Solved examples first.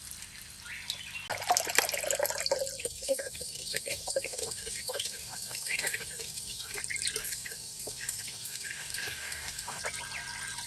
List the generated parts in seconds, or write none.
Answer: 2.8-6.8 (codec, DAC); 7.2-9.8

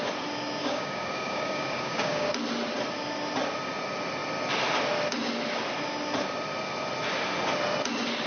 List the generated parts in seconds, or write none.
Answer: 0.6-2.3 (codec, DAC)

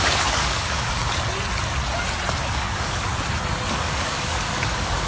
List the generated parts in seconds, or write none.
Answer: 0.0-1.0 (codec, DAC); 2.4-3.1; 3.7-5.1

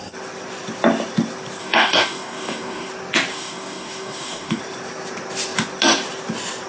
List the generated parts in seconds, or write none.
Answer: 1.6-2.9 (codec, DAC); 3.3-4.6

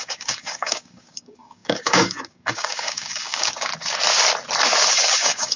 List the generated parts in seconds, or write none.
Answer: 0.0-3.7 (codec, DAC); 4.9-5.6